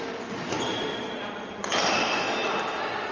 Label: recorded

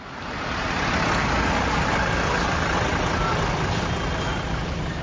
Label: recorded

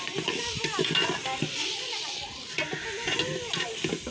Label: recorded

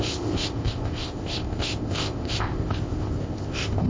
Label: remade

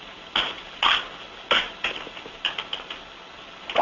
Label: recorded